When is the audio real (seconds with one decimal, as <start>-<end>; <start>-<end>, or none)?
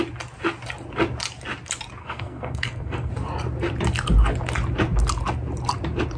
0.0-2.0; 3.1-6.2